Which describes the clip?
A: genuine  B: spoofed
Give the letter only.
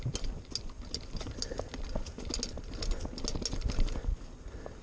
A